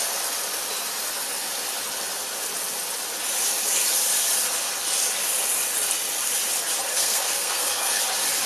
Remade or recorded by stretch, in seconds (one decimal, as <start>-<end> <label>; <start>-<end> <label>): 0.0-6.9 recorded; 6.9-8.0 remade; 8.0-8.5 recorded